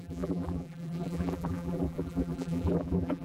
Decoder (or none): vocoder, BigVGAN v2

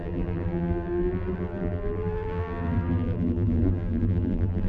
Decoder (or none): vocoder, BigVGAN v2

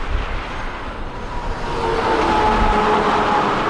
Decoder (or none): vocoder, BigVGAN v2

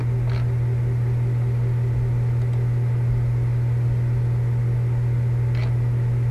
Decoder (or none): none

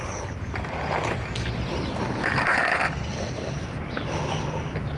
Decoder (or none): none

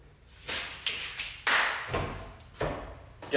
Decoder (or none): none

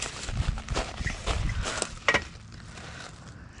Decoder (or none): vocoder, BigVGAN v2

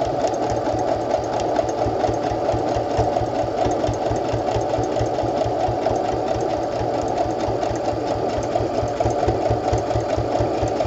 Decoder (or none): none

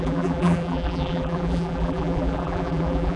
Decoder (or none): vocoder, BigVGAN v2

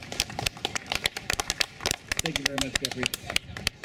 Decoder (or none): vocoder, BigVGAN v2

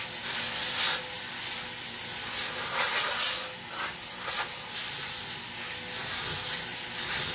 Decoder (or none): none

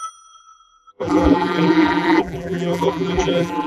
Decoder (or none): vocoder, BigVGAN v2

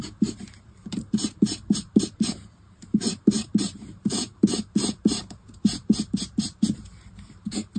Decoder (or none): vocoder, BigVGAN v2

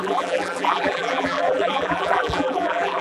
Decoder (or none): vocoder, BigVGAN v2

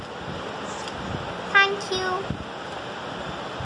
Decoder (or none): none